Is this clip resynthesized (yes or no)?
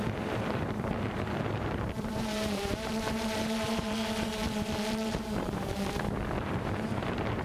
yes